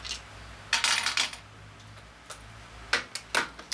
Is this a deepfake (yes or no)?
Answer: no